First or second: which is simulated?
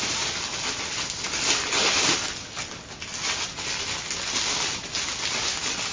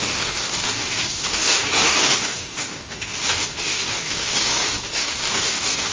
second